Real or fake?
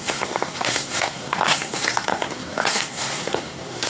fake